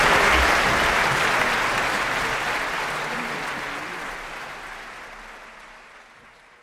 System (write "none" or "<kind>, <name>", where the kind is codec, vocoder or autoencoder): none